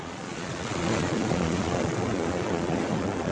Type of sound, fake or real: fake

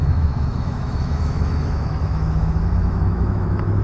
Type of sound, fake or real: fake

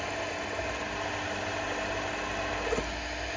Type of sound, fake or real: real